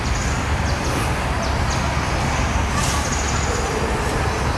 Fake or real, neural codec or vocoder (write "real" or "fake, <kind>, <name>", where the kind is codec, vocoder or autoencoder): real